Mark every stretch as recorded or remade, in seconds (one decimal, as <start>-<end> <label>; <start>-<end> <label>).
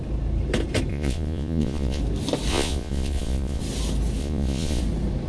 0.0-0.9 recorded; 0.9-2.0 remade; 2.0-2.5 recorded; 2.5-3.6 remade; 3.6-4.2 recorded; 4.2-4.8 remade; 4.8-5.3 recorded